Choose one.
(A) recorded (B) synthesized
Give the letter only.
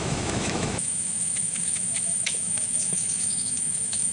B